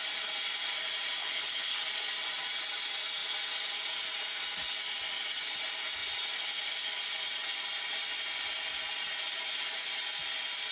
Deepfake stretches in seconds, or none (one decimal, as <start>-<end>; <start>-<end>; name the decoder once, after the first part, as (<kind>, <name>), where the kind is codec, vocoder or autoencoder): 1.2-1.8 (codec, HILCodec)